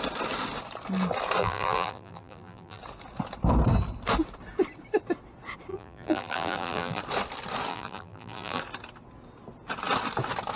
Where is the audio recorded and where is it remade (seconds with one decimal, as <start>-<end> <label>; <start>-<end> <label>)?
0.0-1.4 recorded; 1.4-2.8 remade; 2.8-5.7 recorded; 5.7-7.0 remade; 7.0-7.7 recorded; 7.7-8.6 remade; 8.6-10.6 recorded